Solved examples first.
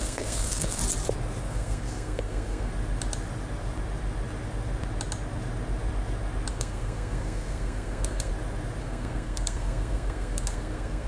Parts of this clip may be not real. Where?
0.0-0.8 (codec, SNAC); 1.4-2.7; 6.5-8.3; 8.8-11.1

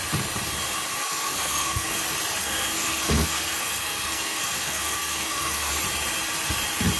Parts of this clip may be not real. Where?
1.0-2.0 (codec, SNAC); 2.4-5.7

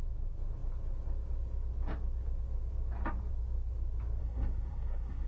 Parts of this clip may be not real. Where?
4.2-5.3 (codec, SNAC)

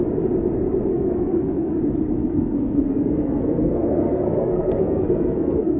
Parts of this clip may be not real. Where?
0.9-1.8 (codec, SNAC); 2.2-5.8

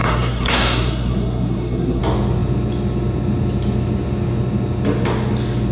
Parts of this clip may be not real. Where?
0.0-2.0 (codec, SNAC)

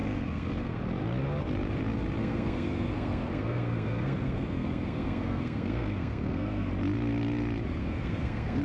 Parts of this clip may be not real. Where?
0.0-0.8 (codec, SNAC); 2.2-6.7; 7.8-8.6

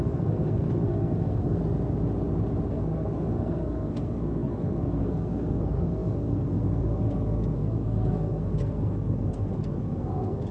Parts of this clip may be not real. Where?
0.0-1.6 (codec, SNAC); 2.7-10.5

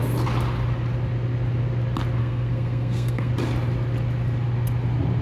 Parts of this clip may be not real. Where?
2.2-3.3 (codec, SNAC)